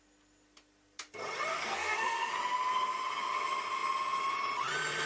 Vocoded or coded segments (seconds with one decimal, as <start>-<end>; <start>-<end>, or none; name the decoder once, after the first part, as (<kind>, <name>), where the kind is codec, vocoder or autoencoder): 1.5-2.3 (codec, SNAC)